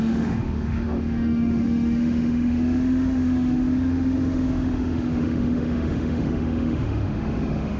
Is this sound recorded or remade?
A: remade